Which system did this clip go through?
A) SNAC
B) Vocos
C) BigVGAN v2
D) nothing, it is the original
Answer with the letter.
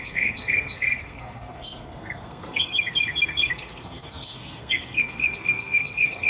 A